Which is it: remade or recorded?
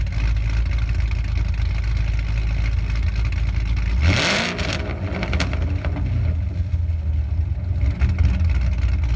recorded